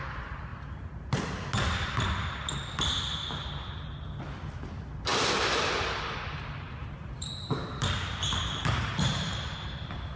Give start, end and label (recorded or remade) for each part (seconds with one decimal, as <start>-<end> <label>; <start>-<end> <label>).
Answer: 0.0-5.1 recorded; 5.1-6.0 remade; 6.0-6.8 recorded; 6.8-10.2 remade